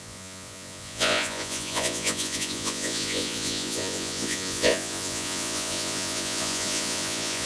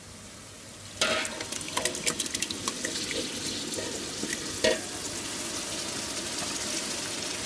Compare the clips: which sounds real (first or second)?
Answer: second